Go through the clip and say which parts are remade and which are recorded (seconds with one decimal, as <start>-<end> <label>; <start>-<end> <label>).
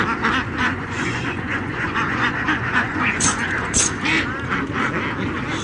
0.0-0.6 recorded; 0.6-4.0 remade; 4.0-5.6 recorded